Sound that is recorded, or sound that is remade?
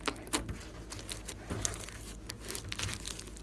recorded